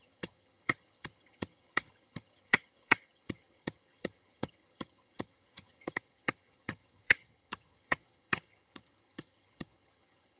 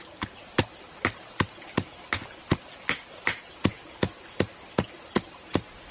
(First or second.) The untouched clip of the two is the second